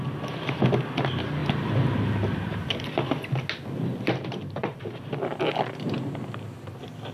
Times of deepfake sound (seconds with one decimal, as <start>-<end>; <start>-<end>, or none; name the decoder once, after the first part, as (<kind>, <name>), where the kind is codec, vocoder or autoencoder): 3.9-5.6 (vocoder, BigVGAN v2)